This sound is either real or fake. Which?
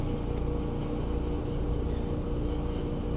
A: real